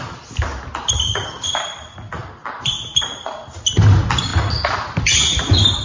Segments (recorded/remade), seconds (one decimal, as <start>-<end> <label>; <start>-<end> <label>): 0.0-5.8 recorded